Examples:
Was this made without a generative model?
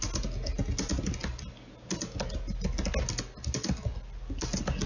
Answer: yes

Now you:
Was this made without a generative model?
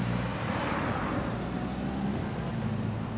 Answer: yes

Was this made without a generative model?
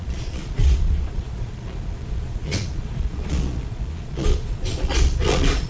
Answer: no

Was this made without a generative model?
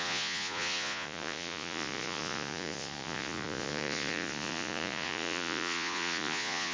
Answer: no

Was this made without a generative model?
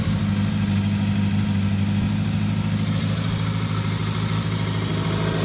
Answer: yes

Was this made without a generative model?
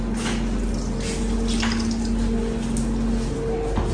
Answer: yes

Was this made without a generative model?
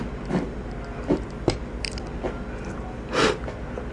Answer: yes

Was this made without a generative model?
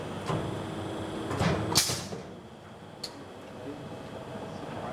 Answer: yes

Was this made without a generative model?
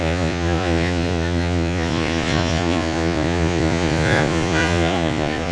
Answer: no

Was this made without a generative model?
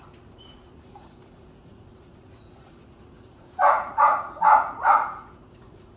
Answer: no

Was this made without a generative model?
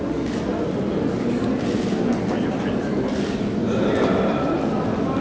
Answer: yes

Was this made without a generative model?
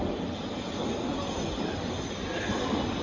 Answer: yes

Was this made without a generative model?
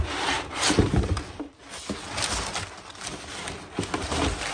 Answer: yes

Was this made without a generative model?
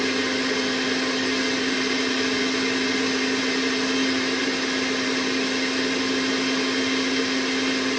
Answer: yes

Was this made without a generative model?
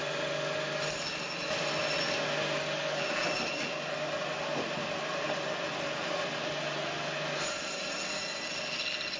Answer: yes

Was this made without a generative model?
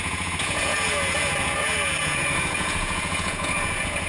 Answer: no